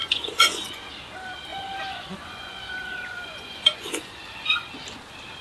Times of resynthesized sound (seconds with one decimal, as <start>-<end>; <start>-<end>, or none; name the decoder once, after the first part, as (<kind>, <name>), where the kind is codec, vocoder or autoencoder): 0.0-0.9 (vocoder, Vocos); 1.5-4.7